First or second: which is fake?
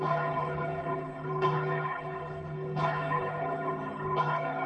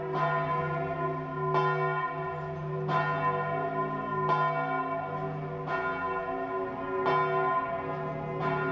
first